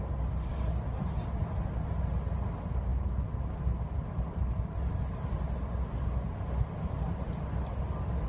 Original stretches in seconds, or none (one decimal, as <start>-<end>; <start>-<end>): 0.0-8.3